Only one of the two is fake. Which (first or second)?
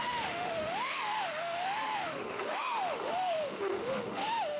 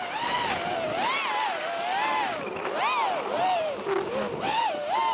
first